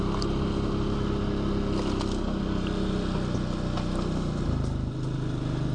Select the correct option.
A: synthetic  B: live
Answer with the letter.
B